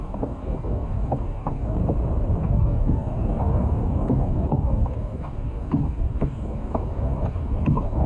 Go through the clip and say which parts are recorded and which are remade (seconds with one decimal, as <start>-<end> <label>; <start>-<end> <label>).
0.0-1.8 remade; 1.8-2.4 recorded; 2.4-8.1 remade